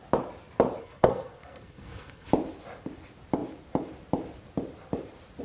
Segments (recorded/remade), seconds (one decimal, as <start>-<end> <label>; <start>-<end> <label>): 0.0-0.8 recorded; 0.8-2.3 remade; 2.3-5.4 recorded